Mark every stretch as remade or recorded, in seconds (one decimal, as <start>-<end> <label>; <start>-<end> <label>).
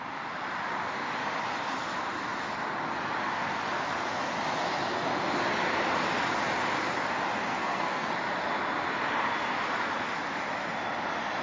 0.0-7.5 recorded; 7.5-8.1 remade; 8.1-11.4 recorded